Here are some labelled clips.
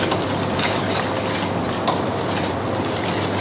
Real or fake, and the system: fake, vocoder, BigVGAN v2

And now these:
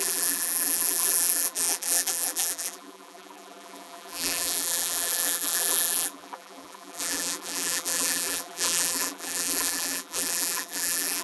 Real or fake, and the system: fake, vocoder, BigVGAN v2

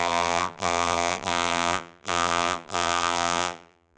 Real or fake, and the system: fake, vocoder, BigVGAN v2